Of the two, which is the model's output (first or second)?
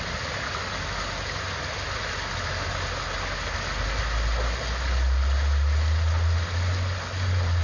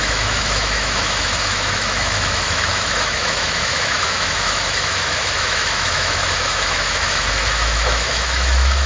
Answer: second